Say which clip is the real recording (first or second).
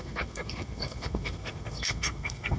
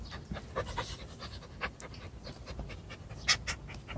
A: second